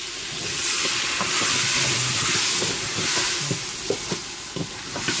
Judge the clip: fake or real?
real